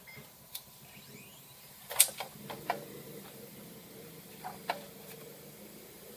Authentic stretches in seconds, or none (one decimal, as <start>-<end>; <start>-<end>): none